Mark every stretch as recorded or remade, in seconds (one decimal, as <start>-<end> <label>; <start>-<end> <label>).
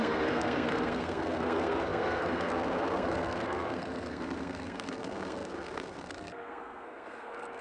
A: 0.0-7.6 remade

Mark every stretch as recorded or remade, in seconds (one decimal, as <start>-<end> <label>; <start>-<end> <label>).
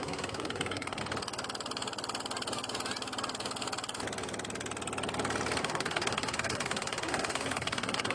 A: 0.0-1.0 remade; 1.0-5.6 recorded; 5.6-8.1 remade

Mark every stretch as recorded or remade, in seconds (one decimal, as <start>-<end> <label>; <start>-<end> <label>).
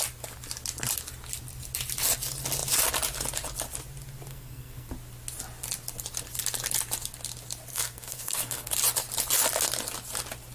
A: 0.0-4.3 recorded; 4.3-4.9 remade; 4.9-7.7 recorded; 7.7-8.7 remade; 8.7-10.5 recorded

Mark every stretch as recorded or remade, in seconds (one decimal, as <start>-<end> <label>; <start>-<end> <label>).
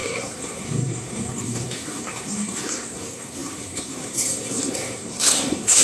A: 0.0-5.8 remade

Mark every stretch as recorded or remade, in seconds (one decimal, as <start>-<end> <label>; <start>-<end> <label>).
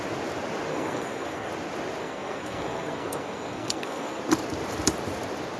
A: 0.0-0.7 recorded; 0.7-1.5 remade; 1.5-2.0 recorded; 2.0-4.2 remade; 4.2-5.6 recorded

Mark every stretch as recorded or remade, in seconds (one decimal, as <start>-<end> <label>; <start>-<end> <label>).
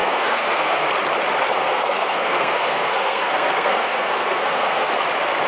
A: 0.0-0.9 remade; 0.9-1.6 recorded; 1.6-4.9 remade; 4.9-5.5 recorded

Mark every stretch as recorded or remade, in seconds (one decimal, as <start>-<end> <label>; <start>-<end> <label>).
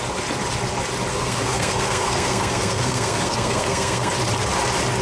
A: 0.0-1.1 recorded; 1.1-4.1 remade; 4.1-5.0 recorded